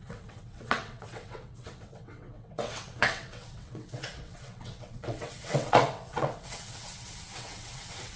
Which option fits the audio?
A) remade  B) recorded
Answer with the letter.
A